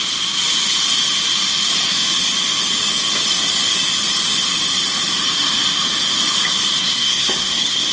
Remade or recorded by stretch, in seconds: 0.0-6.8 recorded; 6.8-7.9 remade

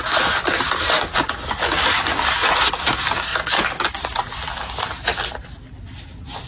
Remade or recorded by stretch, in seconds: 0.0-6.5 recorded

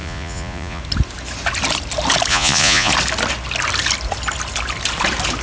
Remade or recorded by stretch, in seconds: 0.0-0.8 remade; 0.8-2.3 recorded; 2.3-2.9 remade; 2.9-5.4 recorded

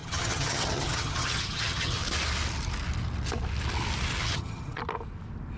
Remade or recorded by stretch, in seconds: 0.0-2.0 remade; 2.0-4.2 recorded; 4.2-4.8 remade; 4.8-5.6 recorded